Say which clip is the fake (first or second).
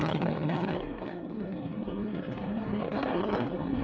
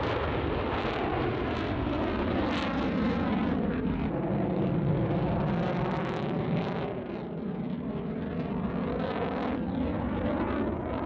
first